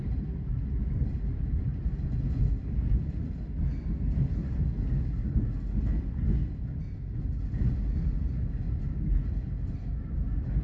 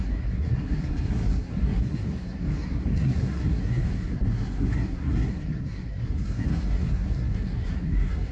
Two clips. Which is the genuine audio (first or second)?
first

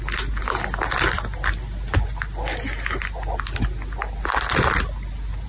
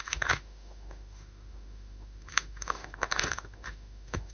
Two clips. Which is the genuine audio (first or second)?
first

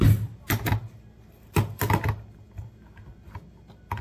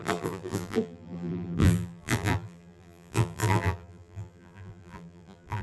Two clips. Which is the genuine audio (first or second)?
first